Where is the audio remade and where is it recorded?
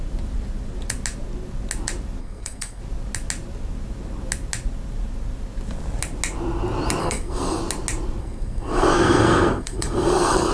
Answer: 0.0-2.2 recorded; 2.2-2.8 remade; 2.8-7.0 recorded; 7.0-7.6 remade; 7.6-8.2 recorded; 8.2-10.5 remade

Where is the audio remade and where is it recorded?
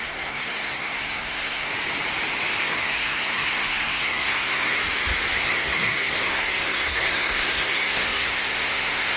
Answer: 0.0-1.7 remade; 1.7-2.6 recorded; 2.6-4.8 remade; 4.8-5.4 recorded; 5.4-9.2 remade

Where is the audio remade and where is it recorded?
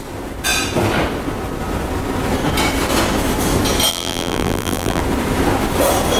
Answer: 0.0-3.9 recorded; 3.9-5.0 remade; 5.0-6.2 recorded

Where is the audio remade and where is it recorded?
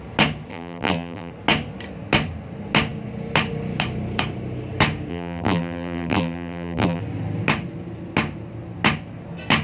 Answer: 0.0-0.5 recorded; 0.5-1.3 remade; 1.3-5.1 recorded; 5.1-7.0 remade; 7.0-9.6 recorded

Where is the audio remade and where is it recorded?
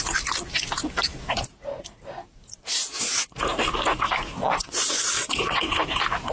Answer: 0.0-4.4 recorded; 4.4-5.8 remade; 5.8-6.3 recorded